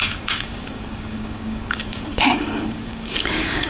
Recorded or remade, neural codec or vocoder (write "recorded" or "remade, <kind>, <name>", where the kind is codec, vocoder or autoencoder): remade, codec, DAC